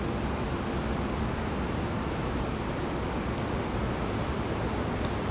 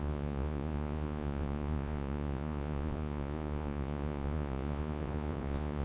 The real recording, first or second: first